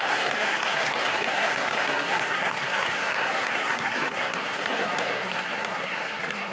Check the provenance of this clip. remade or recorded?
remade